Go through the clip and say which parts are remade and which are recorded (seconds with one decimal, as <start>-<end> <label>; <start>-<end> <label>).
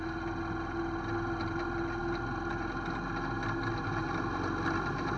0.0-5.2 recorded